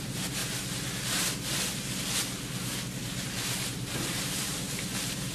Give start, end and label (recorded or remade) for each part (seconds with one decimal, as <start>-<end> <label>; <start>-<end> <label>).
0.0-0.4 remade; 0.4-2.9 recorded; 2.9-5.3 remade